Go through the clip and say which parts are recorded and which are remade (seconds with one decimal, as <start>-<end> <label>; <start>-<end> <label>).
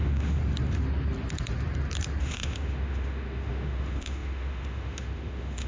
0.0-0.4 remade; 0.4-2.2 recorded; 2.2-5.7 remade